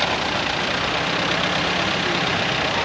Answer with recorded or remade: recorded